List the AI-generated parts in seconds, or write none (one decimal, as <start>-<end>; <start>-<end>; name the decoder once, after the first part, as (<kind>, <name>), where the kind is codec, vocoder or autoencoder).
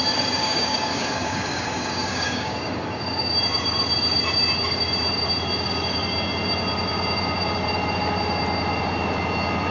0.4-3.0 (codec, DAC)